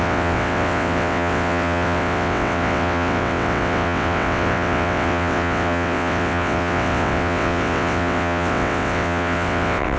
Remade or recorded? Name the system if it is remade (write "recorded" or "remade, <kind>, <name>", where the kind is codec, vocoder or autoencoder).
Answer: remade, vocoder, WaveNeXt